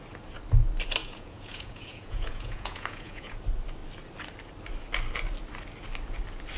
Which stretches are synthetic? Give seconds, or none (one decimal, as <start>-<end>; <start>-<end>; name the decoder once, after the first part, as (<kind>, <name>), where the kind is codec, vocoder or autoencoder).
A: 1.0-3.4 (vocoder, Vocos)